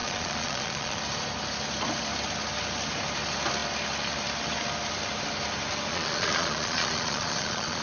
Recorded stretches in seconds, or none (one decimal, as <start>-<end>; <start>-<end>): 1.0-5.9

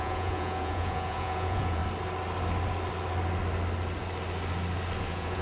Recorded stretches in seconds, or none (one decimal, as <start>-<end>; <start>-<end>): 1.8-5.0